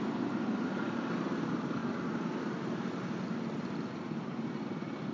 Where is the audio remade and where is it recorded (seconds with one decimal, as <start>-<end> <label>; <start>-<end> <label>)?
0.0-5.1 recorded